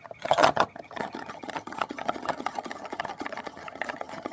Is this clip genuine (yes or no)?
no